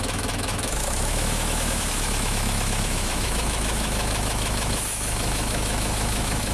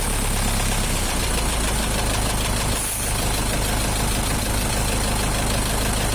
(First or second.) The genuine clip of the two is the second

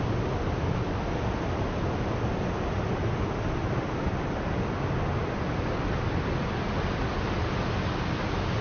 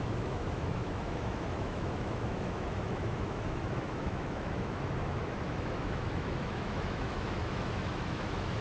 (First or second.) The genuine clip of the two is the first